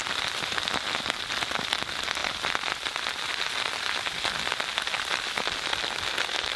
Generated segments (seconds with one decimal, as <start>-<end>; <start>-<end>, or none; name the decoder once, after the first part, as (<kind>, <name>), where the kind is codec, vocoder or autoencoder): 0.0-1.2 (vocoder, BigVGAN v2); 2.2-6.6